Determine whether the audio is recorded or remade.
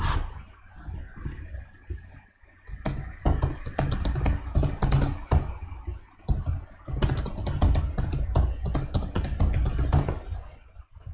recorded